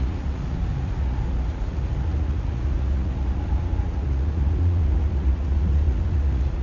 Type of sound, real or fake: fake